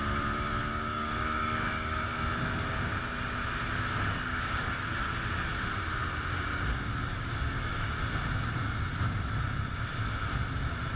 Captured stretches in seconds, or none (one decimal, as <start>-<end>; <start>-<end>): 0.0-0.6; 2.2-4.1; 4.7-7.1; 8.0-11.0